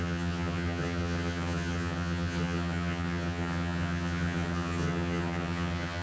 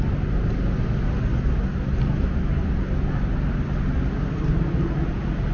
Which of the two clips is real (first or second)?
second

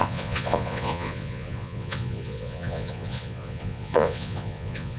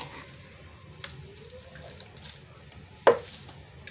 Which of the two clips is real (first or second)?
second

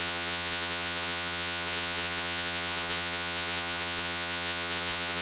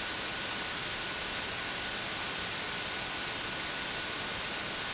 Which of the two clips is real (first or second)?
second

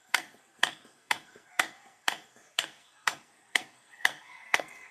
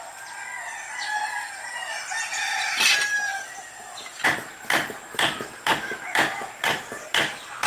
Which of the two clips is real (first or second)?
second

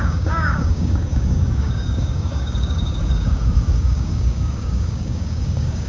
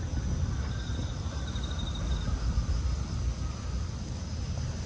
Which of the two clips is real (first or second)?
second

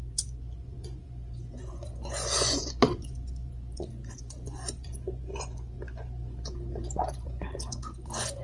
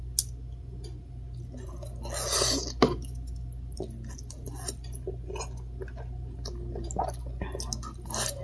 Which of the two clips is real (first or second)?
second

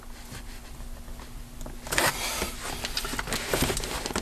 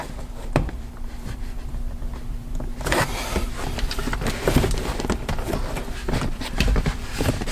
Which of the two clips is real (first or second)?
first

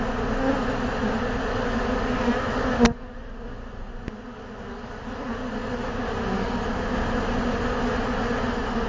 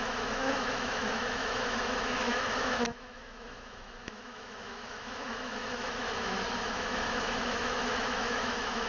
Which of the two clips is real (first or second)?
first